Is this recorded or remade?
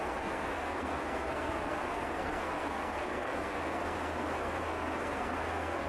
remade